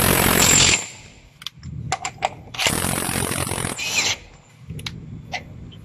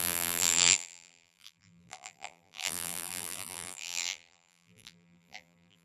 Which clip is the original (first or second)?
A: first